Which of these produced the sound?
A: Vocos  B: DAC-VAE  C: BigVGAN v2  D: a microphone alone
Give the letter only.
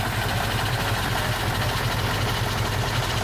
D